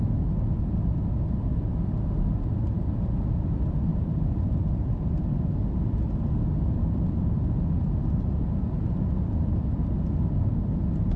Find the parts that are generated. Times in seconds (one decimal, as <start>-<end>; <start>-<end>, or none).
1.5-2.9; 3.9-7.5